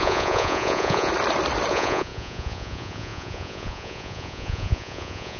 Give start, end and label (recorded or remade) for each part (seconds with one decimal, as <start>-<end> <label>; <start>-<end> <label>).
0.0-1.1 remade; 1.1-1.7 recorded; 1.7-5.4 remade